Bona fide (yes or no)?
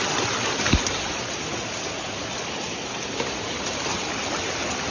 yes